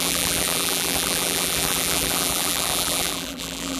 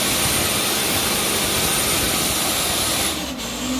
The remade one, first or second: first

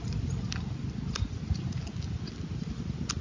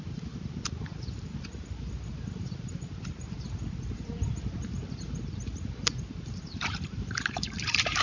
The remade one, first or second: second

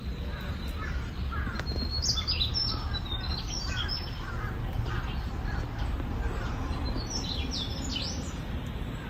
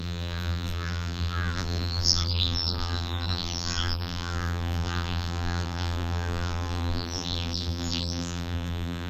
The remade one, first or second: second